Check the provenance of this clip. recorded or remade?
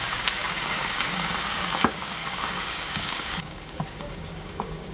remade